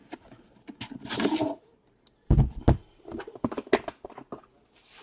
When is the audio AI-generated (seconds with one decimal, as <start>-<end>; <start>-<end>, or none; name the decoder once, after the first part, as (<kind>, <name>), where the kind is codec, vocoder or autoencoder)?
none